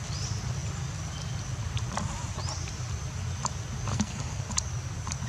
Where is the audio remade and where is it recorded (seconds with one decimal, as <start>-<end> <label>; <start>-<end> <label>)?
0.0-3.9 recorded; 3.9-4.4 remade; 4.4-5.3 recorded